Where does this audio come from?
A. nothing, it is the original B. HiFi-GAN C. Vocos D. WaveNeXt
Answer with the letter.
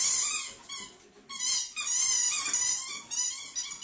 A